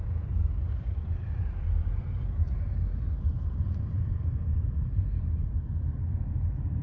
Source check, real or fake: fake